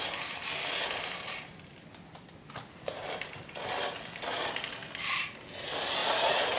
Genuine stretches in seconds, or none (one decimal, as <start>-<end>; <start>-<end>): 0.0-6.0